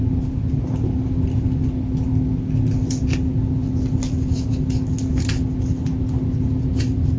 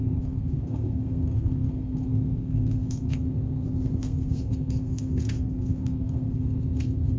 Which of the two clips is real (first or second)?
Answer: first